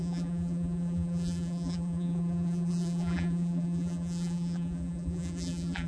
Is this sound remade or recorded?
remade